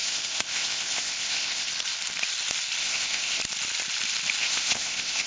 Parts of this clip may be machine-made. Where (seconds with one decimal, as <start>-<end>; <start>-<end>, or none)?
0.0-1.7; 2.8-3.4; 4.4-5.3

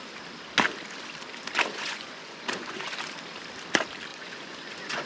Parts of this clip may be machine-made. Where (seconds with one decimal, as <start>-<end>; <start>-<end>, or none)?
1.7-2.9; 4.1-5.1

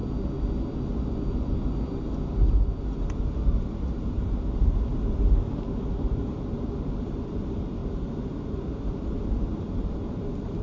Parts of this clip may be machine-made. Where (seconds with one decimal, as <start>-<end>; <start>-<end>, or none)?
3.8-4.9; 5.6-10.6

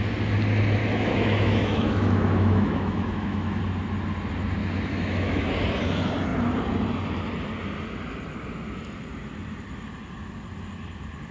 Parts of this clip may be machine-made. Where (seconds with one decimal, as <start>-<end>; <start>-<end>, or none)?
0.8-3.6; 4.6-5.5

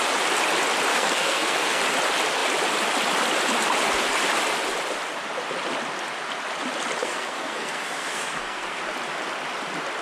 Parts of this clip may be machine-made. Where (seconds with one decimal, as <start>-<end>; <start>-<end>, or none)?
0.9-1.8; 7.0-8.8

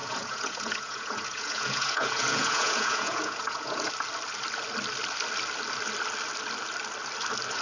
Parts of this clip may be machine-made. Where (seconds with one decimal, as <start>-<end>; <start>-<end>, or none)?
0.0-3.9

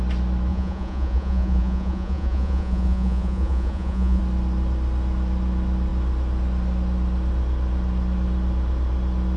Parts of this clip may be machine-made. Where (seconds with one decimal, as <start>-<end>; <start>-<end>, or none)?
0.5-4.2